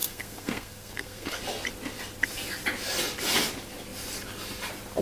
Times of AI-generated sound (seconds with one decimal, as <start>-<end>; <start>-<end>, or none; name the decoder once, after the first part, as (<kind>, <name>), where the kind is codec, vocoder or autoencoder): 0.0-1.4 (codec, SNAC)